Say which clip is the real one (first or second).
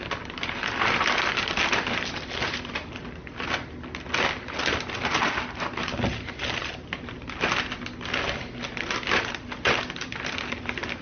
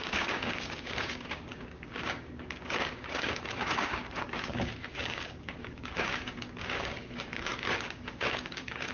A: first